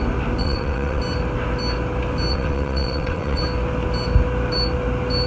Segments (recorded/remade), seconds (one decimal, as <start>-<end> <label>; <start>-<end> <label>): 0.0-0.4 recorded; 0.4-1.0 remade; 1.0-2.3 recorded; 2.3-3.4 remade; 3.4-5.3 recorded